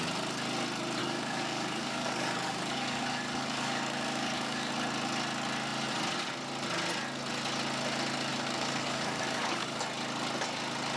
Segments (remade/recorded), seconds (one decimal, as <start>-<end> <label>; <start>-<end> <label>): 0.0-1.0 recorded; 1.0-4.7 remade; 4.7-8.3 recorded; 8.3-9.8 remade; 9.8-11.0 recorded

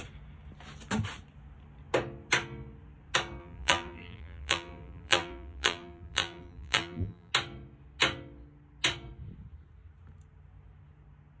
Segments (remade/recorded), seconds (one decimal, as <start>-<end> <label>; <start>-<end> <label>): 0.0-3.4 recorded; 3.4-7.3 remade; 7.3-11.4 recorded